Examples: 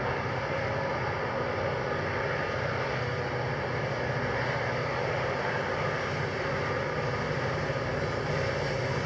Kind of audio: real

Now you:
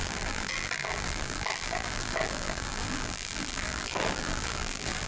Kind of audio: fake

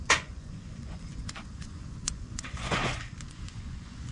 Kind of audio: fake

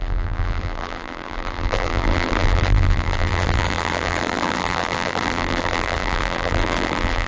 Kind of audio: fake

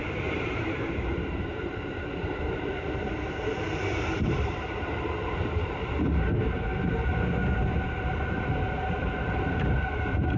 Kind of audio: fake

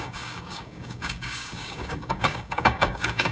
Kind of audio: fake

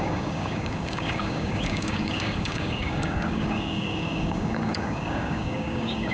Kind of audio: fake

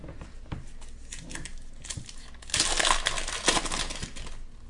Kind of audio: real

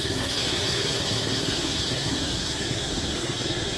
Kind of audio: fake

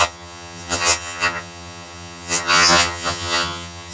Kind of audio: fake